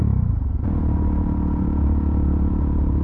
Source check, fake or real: real